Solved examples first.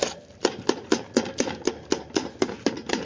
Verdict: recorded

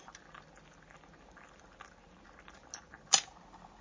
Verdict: recorded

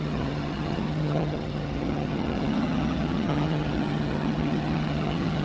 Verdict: remade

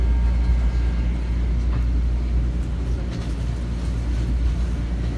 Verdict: recorded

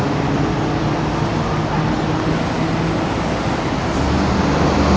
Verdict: recorded